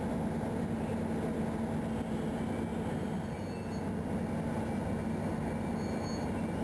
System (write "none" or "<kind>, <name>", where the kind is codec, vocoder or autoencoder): none